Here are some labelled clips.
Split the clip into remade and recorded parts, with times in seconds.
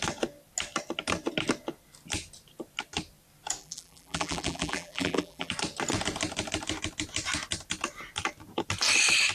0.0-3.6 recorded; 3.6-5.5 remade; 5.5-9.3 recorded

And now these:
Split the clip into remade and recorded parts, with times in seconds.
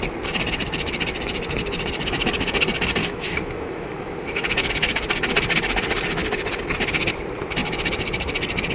0.0-3.0 recorded; 3.0-4.7 remade; 4.7-8.7 recorded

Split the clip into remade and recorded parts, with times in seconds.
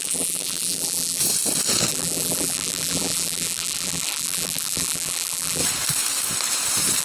0.0-1.2 remade; 1.2-1.9 recorded; 1.9-5.6 remade; 5.6-7.0 recorded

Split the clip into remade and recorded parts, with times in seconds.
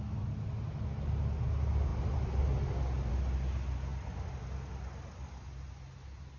0.0-6.4 recorded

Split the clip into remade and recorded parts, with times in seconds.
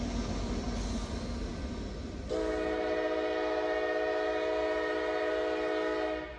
0.0-6.4 recorded